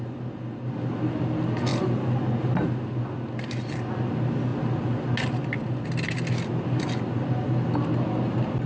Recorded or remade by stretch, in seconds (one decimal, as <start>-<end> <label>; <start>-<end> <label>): 0.0-8.7 recorded